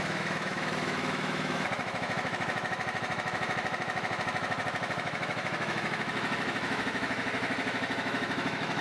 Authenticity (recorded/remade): remade